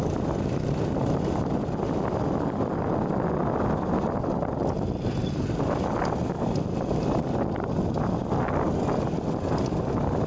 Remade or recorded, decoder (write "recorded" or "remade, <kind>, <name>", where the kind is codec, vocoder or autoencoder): recorded